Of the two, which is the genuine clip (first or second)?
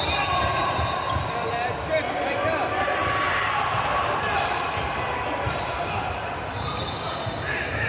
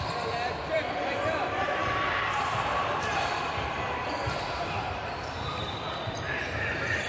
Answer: first